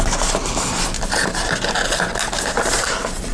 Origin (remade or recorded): recorded